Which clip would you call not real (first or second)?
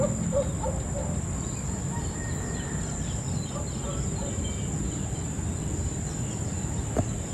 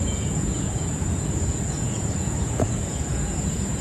second